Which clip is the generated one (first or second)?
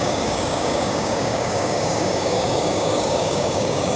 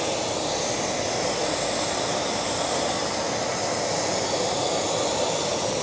first